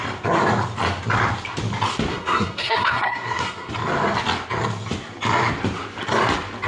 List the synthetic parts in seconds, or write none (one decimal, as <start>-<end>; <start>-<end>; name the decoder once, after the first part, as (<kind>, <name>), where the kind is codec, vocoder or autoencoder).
2.1-3.7 (codec, SNAC)